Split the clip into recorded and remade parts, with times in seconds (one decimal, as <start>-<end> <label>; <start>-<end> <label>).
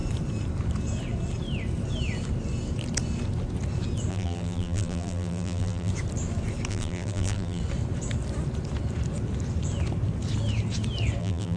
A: 0.0-4.1 recorded; 4.1-5.9 remade; 5.9-6.7 recorded; 6.7-7.6 remade; 7.6-11.2 recorded; 11.2-11.6 remade